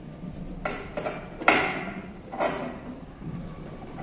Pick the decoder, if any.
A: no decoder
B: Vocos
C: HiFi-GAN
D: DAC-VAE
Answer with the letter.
A